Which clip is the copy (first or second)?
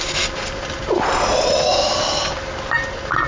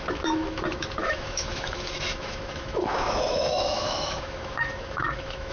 second